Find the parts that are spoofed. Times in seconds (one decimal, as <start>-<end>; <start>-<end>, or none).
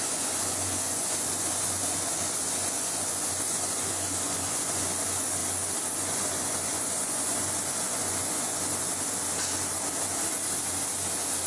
0.0-5.4; 6.0-8.9